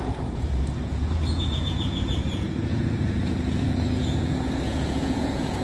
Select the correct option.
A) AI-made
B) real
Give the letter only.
A